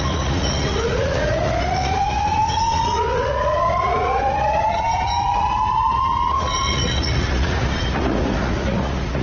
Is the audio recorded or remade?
remade